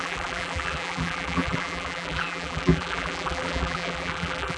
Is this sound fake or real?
fake